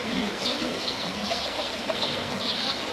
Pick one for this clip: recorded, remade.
remade